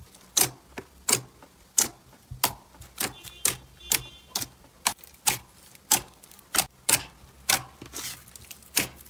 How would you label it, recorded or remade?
recorded